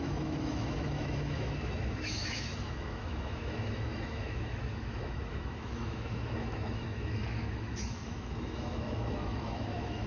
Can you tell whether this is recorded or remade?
remade